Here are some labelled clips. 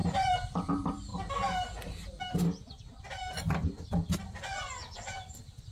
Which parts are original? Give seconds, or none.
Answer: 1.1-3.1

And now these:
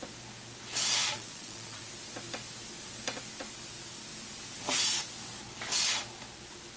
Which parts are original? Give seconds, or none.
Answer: 0.0-1.0; 1.9-6.8